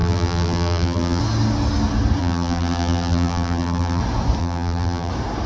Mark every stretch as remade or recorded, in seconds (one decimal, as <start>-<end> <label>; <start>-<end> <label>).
0.0-1.2 remade; 1.2-2.2 recorded; 2.2-4.0 remade; 4.0-4.4 recorded; 4.4-5.1 remade; 5.1-5.5 recorded